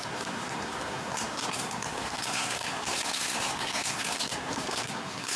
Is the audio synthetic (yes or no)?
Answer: yes